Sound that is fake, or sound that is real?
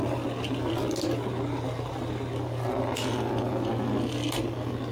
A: real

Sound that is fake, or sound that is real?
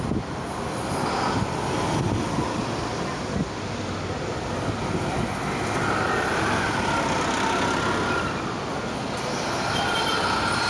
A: real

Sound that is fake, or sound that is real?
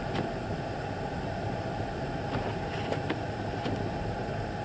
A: real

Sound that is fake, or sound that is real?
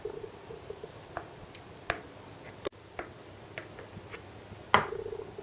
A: real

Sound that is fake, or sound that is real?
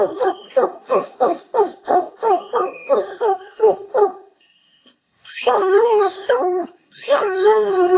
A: fake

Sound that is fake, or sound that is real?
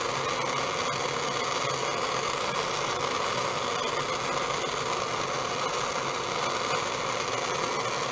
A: real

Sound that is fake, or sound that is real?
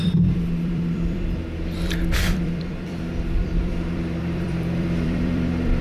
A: fake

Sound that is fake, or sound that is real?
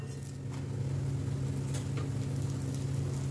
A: real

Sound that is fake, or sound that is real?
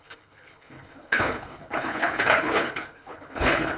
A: fake